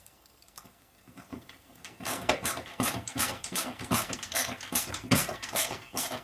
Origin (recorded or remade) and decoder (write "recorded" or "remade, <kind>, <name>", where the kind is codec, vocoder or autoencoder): remade, codec, SNAC